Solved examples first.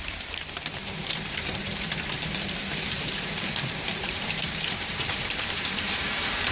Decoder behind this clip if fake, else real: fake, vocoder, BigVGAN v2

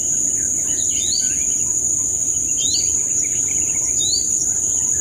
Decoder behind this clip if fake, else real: real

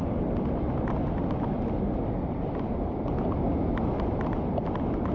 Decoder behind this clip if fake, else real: real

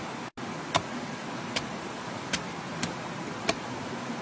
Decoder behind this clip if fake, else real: real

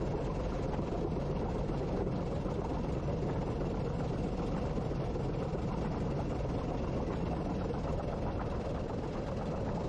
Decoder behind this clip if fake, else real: real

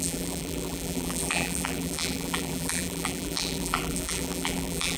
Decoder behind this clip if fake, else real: fake, vocoder, BigVGAN v2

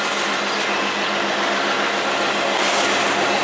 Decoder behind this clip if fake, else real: real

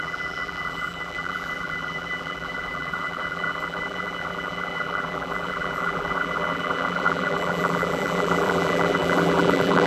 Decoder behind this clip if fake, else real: fake, vocoder, BigVGAN v2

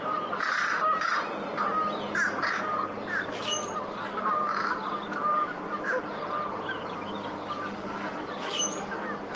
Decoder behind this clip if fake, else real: real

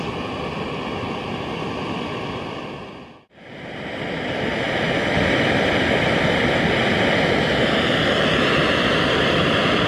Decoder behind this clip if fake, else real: real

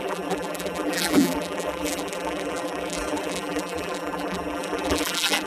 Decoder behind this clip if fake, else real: fake, vocoder, BigVGAN v2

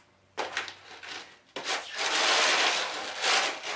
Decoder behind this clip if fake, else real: real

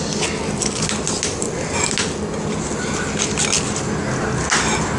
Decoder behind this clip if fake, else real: real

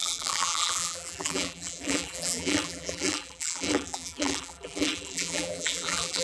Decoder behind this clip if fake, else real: fake, vocoder, BigVGAN v2